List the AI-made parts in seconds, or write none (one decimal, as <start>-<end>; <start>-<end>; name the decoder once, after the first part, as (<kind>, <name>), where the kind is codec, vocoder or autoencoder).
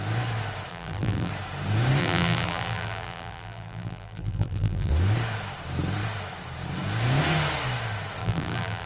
0.7-1.3 (vocoder, BigVGAN v2); 2.0-4.9; 8.2-8.9